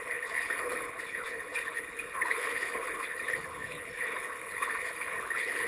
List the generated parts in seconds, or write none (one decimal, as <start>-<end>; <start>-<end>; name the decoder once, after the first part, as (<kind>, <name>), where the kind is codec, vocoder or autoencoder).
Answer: 0.0-5.7 (codec, HILCodec)